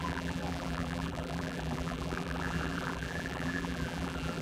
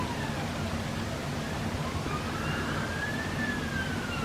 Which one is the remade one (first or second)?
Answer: first